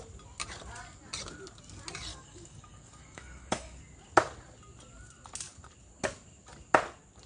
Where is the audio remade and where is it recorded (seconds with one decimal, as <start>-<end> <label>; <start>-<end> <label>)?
0.0-2.1 recorded; 2.1-3.8 remade; 3.8-7.3 recorded